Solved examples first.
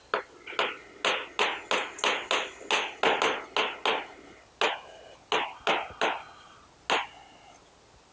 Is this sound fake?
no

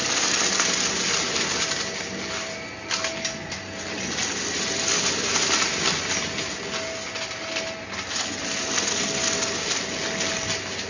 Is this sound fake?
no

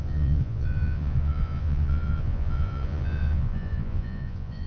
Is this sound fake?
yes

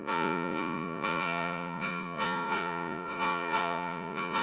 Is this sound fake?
yes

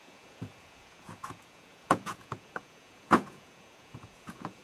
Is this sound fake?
yes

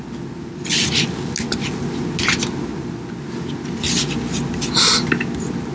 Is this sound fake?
no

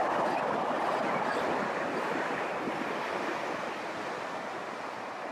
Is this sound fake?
no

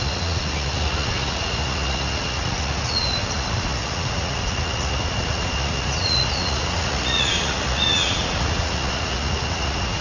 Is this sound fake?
yes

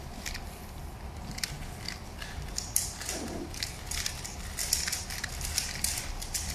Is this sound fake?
no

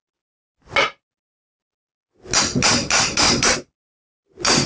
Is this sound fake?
no